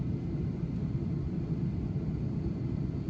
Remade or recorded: recorded